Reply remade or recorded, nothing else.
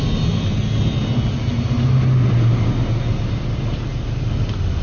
recorded